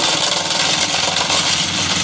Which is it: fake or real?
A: real